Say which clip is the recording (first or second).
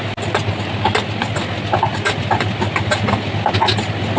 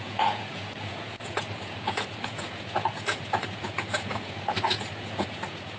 first